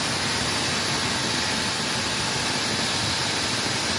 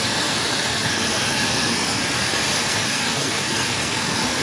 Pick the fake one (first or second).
second